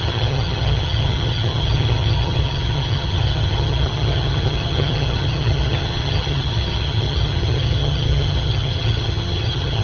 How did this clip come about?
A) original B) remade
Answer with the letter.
B